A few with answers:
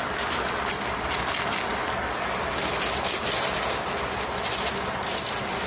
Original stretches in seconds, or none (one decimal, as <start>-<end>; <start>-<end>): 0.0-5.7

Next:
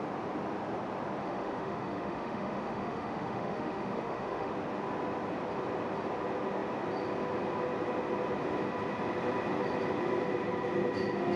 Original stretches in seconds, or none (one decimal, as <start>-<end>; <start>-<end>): 0.0-1.2; 4.5-11.4

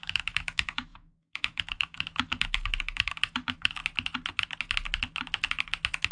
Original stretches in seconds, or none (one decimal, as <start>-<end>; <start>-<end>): 3.8-6.1

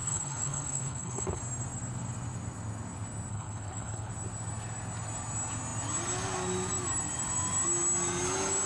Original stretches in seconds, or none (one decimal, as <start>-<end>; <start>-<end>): 1.4-3.3; 4.1-8.7